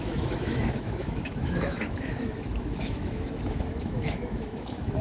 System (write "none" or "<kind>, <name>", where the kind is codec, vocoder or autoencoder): autoencoder, DAC-VAE